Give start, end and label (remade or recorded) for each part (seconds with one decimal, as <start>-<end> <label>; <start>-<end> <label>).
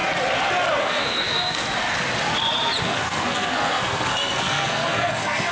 0.0-0.8 recorded; 0.8-1.6 remade; 1.6-2.8 recorded; 2.8-5.5 remade